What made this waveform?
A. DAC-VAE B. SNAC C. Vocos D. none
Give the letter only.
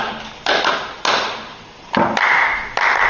D